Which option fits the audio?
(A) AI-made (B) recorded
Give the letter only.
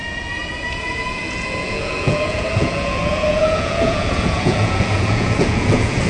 A